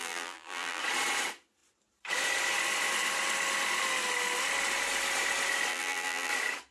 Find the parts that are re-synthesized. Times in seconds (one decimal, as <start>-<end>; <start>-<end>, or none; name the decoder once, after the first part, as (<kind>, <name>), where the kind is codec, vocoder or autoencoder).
0.0-0.8 (vocoder, BigVGAN v2); 5.7-6.3